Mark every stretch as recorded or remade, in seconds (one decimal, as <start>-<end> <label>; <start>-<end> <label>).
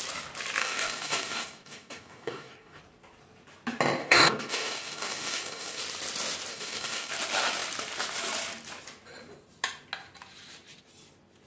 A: 0.0-0.6 recorded; 0.6-2.8 remade; 2.8-4.0 recorded; 4.0-5.8 remade; 5.8-6.5 recorded; 6.5-7.1 remade; 7.1-11.5 recorded